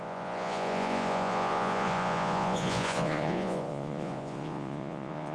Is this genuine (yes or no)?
no